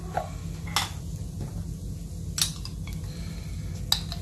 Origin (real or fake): real